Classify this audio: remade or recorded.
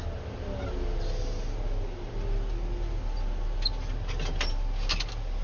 recorded